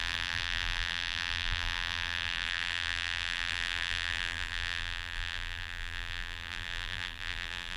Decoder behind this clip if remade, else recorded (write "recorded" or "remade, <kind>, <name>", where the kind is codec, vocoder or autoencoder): remade, vocoder, BigVGAN v2